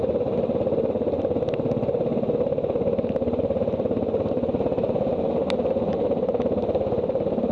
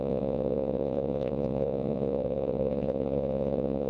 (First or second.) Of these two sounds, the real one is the first